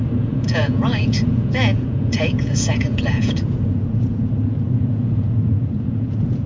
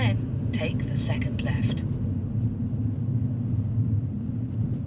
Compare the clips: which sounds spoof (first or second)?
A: first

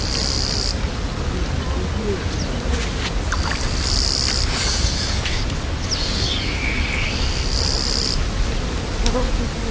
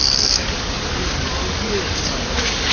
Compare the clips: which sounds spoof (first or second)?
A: second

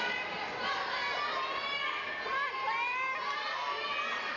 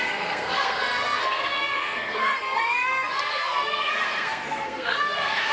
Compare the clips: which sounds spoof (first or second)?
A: second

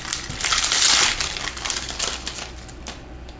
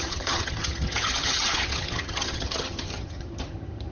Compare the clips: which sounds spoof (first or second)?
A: second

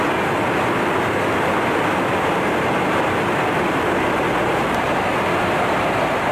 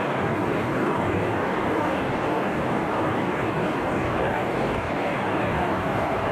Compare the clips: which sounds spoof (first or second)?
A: second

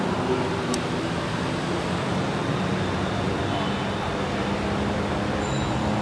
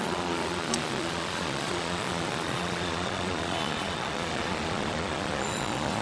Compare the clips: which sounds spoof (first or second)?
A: second